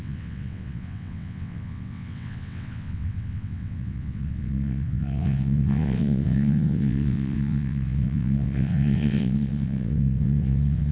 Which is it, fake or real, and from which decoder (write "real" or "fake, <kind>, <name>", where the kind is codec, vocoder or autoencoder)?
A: fake, vocoder, WaveNeXt